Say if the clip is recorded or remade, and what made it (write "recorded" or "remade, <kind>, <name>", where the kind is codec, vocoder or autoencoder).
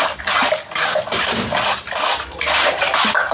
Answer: recorded